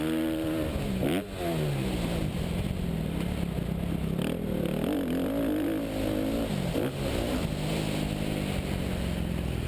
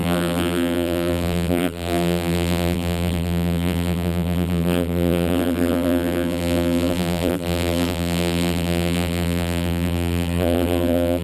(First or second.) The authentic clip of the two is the first